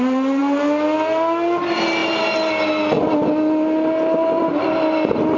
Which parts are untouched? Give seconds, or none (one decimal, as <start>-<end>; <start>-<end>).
0.0-5.4